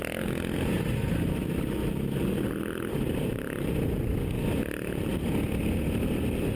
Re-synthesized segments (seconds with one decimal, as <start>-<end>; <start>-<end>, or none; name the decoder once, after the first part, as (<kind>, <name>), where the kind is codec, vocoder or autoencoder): none